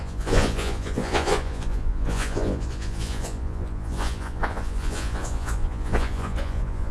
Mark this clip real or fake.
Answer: fake